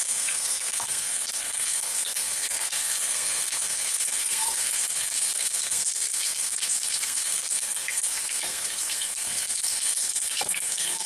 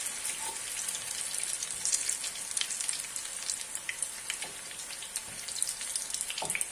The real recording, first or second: second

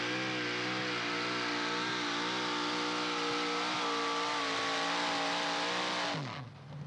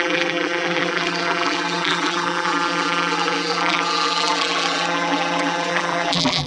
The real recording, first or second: first